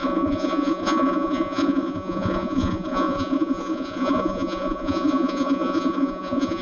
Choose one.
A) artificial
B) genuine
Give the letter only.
A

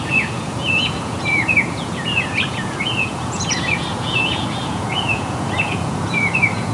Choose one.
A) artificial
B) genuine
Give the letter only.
A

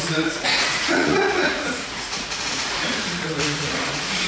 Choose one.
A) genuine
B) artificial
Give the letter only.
B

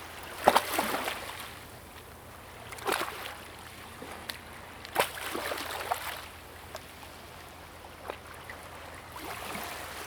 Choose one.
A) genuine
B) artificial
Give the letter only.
A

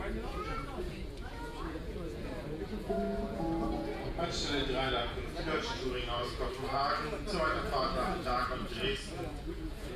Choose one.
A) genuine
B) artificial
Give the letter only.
B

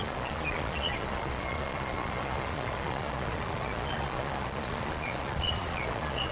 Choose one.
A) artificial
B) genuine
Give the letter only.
A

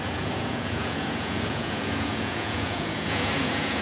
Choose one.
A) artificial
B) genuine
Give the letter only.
A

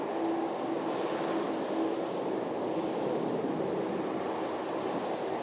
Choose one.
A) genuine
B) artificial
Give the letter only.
A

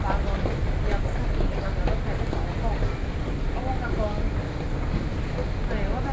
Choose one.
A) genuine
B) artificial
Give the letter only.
A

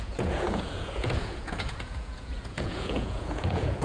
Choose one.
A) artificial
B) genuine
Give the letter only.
A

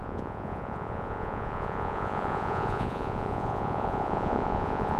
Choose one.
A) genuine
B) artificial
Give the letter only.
B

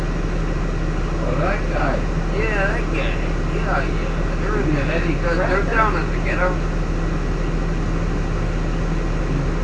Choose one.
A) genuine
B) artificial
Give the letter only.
A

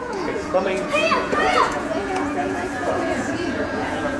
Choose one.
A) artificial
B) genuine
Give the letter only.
A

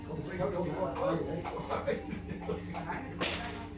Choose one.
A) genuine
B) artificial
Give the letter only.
A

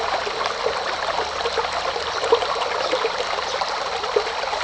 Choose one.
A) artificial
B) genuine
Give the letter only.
B